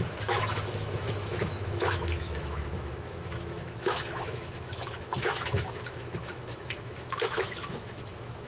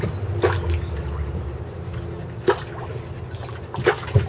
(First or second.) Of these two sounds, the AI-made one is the first